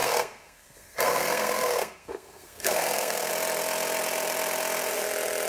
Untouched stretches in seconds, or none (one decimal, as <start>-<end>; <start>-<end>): 3.3-5.5